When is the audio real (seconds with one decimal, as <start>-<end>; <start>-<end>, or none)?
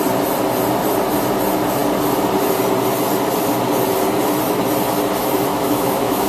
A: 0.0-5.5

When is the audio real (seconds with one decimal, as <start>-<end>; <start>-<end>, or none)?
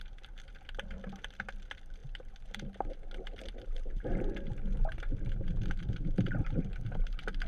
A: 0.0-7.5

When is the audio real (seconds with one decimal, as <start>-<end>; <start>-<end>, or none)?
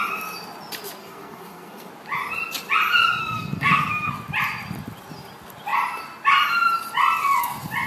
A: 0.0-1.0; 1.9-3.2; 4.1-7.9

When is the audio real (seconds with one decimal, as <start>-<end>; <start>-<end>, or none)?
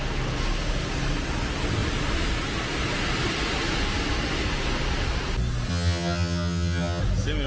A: 0.0-5.7; 7.0-7.5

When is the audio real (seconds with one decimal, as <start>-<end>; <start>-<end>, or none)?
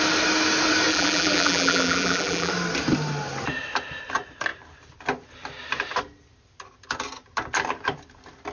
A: 0.0-0.9; 2.5-8.5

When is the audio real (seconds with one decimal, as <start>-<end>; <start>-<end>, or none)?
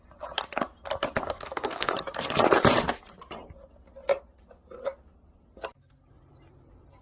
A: 0.0-1.2; 1.9-7.0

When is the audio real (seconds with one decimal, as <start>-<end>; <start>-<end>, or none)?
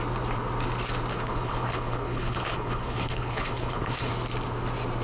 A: 0.0-1.1; 4.1-5.0